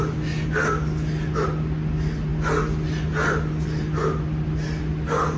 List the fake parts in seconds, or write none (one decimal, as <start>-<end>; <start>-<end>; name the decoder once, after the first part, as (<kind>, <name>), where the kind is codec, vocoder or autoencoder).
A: none